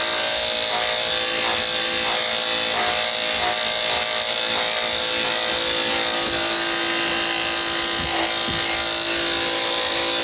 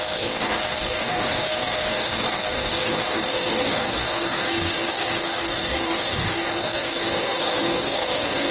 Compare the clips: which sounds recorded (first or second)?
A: first